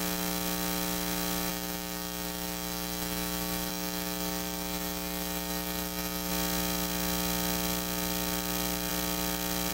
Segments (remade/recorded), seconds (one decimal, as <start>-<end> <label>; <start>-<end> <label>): 0.0-1.5 recorded; 1.5-6.3 remade; 6.3-9.7 recorded